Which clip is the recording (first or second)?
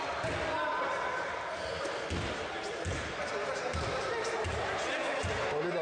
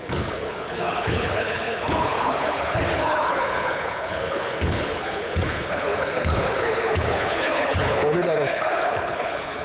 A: first